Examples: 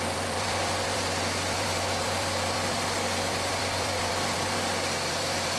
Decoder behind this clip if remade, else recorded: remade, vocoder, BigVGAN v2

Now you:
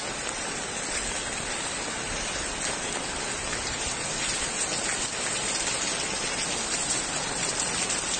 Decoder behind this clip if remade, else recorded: recorded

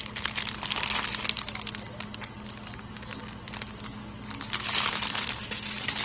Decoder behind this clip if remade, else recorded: recorded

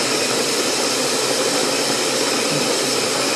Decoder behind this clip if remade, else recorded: recorded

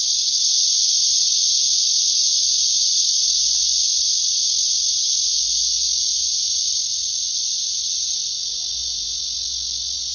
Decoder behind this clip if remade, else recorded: recorded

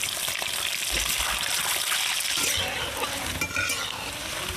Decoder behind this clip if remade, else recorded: recorded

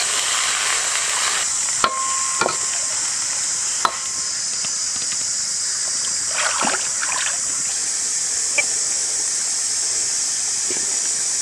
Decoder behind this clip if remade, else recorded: recorded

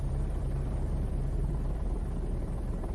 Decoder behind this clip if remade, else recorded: remade, vocoder, BigVGAN v2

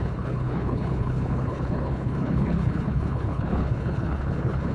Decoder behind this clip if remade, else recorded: remade, codec, HILCodec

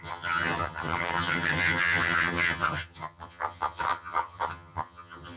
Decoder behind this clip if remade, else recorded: remade, vocoder, HiFi-GAN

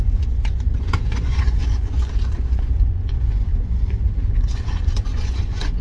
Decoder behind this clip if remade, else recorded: remade, vocoder, Vocos